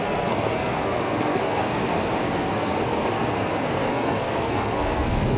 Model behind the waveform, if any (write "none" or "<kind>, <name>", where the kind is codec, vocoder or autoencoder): codec, SNAC